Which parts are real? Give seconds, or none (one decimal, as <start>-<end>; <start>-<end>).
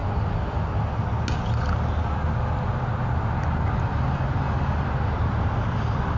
0.0-6.2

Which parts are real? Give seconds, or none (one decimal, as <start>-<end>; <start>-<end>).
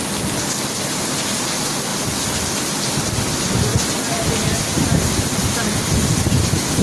0.0-6.8